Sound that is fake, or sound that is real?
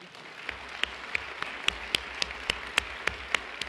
real